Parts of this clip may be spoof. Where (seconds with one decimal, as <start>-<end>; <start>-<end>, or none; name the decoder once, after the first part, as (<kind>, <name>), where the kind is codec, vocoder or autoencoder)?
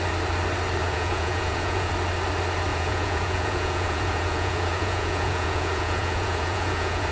0.8-1.9 (vocoder, Vocos); 2.7-7.1